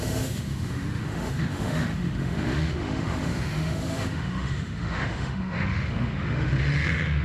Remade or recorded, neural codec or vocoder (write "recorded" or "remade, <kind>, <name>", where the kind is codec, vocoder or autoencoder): remade, autoencoder, DAC-VAE